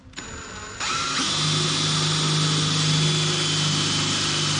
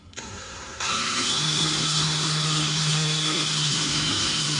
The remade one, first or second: second